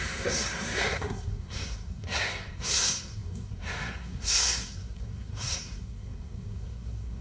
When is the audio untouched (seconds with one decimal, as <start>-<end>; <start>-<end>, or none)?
none